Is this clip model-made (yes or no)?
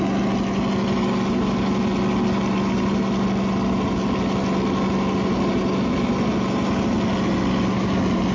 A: no